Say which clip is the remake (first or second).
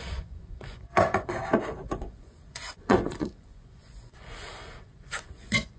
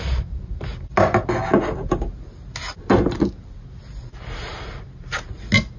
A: first